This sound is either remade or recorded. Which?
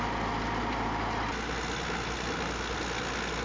recorded